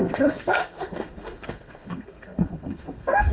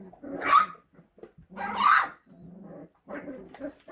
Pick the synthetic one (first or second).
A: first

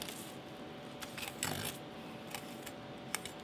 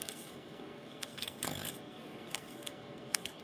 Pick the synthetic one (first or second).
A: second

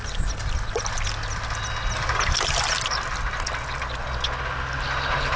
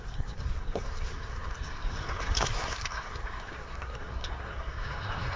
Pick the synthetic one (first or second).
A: second